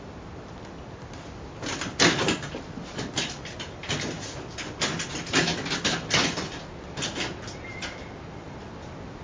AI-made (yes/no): no